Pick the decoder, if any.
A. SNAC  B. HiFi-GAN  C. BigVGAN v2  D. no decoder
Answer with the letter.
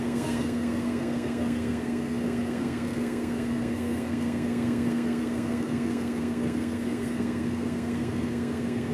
A